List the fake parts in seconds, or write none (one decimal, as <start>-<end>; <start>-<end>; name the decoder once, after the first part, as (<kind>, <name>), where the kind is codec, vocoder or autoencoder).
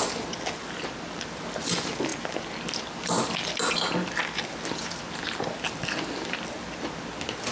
none